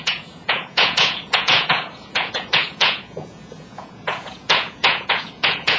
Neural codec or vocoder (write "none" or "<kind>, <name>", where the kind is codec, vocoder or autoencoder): vocoder, Vocos